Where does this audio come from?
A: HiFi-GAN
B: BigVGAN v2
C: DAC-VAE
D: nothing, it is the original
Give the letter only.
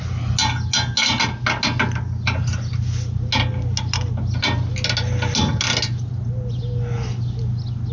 D